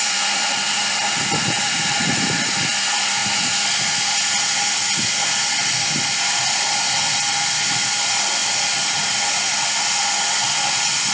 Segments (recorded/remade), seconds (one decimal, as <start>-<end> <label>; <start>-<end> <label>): 0.0-3.2 remade; 3.2-8.0 recorded; 8.0-8.4 remade; 8.4-9.7 recorded; 9.7-11.1 remade